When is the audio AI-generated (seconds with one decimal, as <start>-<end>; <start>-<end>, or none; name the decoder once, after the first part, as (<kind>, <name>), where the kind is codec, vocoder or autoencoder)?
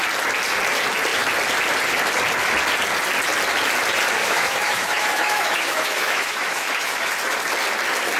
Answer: 4.2-7.1 (autoencoder, DAC-VAE)